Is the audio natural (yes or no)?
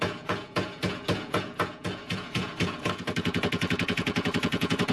no